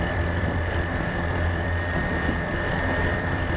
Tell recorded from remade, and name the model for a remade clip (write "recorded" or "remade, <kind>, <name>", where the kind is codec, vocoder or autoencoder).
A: remade, vocoder, BigVGAN v2